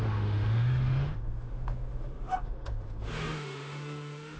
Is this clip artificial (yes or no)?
yes